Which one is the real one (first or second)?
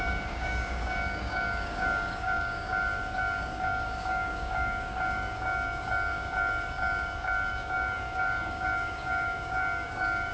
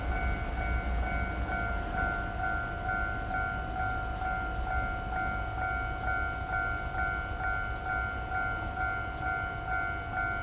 second